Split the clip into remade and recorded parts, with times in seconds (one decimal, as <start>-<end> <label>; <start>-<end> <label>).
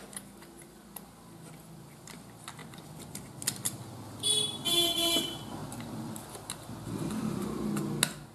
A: 0.0-8.3 recorded